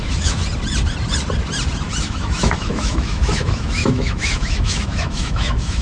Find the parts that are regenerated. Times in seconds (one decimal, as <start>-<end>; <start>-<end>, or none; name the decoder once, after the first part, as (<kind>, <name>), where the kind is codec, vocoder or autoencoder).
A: 0.0-0.4 (autoencoder, DAC-VAE); 2.0-5.8